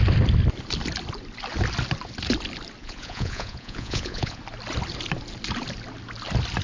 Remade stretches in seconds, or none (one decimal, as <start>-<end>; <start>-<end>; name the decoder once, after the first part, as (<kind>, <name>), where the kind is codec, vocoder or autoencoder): 2.8-4.4 (vocoder, Vocos)